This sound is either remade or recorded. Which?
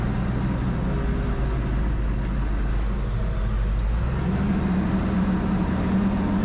recorded